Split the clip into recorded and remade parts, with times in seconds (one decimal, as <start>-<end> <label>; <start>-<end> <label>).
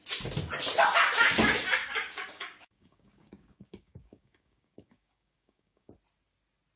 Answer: 0.0-1.8 recorded; 1.8-5.9 remade; 5.9-6.8 recorded